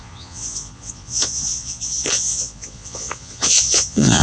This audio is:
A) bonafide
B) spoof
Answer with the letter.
B